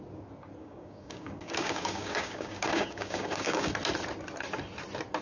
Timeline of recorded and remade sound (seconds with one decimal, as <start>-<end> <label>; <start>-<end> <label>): 0.0-0.6 recorded; 0.6-3.7 remade; 3.7-5.2 recorded